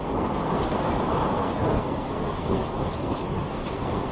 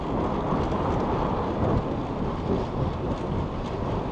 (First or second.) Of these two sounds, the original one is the second